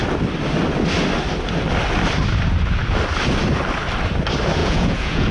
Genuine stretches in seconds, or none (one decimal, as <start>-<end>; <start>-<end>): 0.0-4.6